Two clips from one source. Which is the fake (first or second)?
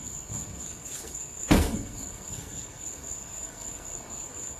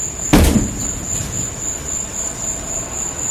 first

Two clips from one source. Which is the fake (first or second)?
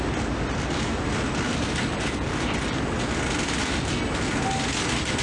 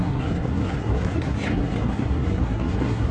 second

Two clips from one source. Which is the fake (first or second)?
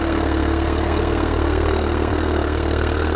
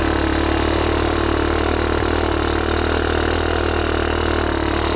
first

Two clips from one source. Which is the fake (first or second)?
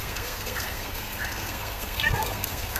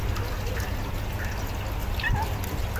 first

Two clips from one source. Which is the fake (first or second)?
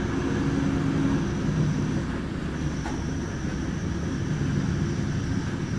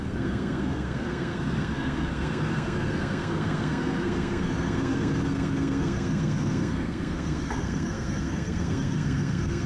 second